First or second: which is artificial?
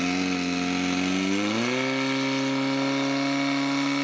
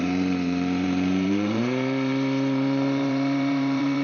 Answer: second